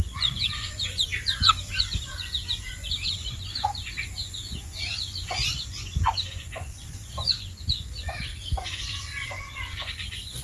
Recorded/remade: remade